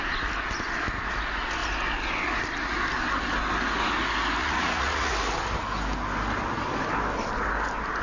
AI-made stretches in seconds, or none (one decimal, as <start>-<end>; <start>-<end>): 4.4-5.1